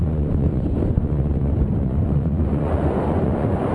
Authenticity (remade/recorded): remade